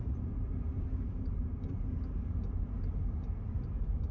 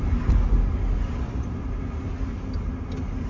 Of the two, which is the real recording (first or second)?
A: second